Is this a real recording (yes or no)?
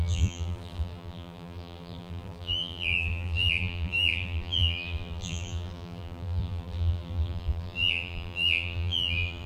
no